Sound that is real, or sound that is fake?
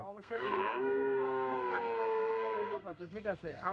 fake